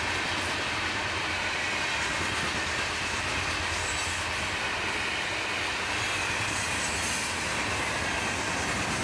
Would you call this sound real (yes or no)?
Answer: yes